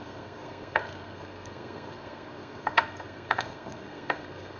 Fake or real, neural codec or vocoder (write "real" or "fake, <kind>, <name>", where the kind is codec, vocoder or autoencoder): fake, codec, SNAC